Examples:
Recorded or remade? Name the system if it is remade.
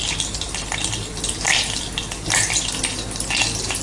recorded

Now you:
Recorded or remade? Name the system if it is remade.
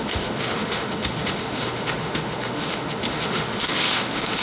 remade, autoencoder, DAC-VAE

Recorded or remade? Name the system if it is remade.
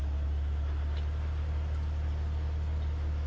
recorded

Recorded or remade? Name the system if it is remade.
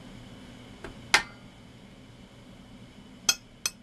recorded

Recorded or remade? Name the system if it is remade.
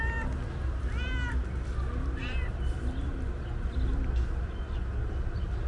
recorded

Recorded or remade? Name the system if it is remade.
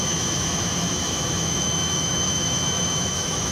remade, autoencoder, DAC-VAE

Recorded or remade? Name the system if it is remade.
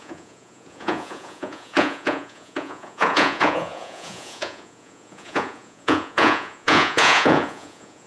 remade, vocoder, Vocos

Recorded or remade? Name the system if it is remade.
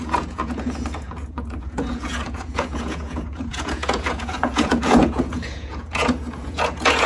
remade, vocoder, Vocos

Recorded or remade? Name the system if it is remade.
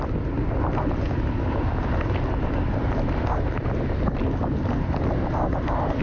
recorded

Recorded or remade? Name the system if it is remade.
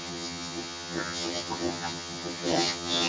remade, vocoder, HiFi-GAN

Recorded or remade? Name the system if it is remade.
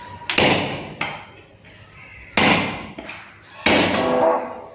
recorded